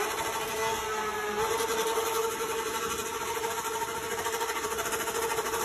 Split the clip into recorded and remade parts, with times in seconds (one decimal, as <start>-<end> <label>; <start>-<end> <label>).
0.0-5.6 recorded